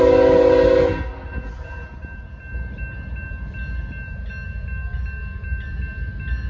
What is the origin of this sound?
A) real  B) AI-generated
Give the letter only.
A